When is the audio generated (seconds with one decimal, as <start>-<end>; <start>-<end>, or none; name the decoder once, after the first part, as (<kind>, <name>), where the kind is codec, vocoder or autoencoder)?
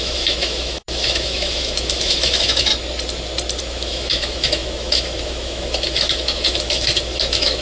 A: 0.0-2.7 (autoencoder, DAC-VAE); 3.6-7.6